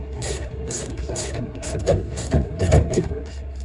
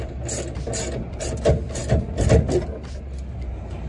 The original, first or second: second